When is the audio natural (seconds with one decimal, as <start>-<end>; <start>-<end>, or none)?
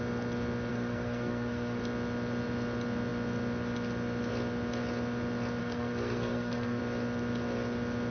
0.0-0.7; 1.8-5.6; 6.8-8.1